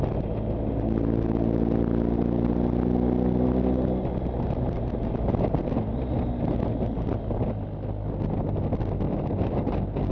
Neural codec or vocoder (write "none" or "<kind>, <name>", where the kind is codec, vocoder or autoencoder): none